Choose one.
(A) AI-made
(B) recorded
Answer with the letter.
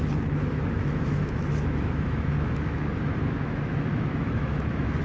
A